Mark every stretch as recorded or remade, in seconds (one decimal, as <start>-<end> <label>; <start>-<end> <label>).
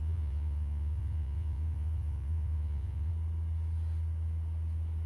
0.0-3.1 remade; 3.1-5.1 recorded